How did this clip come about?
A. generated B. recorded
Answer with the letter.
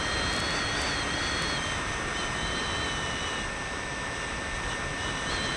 B